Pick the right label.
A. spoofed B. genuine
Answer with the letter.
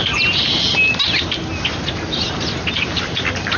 B